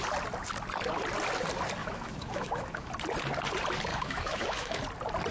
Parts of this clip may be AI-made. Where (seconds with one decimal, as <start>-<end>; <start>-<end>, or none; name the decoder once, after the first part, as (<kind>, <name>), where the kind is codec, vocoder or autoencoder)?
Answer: 1.8-2.9 (autoencoder, DAC-VAE); 3.9-4.8